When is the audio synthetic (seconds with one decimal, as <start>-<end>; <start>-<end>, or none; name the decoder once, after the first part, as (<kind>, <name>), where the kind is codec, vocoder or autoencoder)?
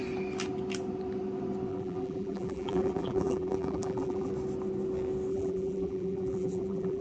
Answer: 1.7-4.3 (vocoder, BigVGAN v2); 5.3-7.0